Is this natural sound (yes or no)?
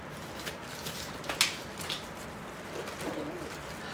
yes